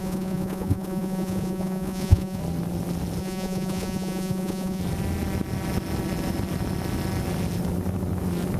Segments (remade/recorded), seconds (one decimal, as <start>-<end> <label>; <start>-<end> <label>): 0.0-2.4 remade; 2.4-3.2 recorded; 3.2-4.8 remade; 4.8-8.6 recorded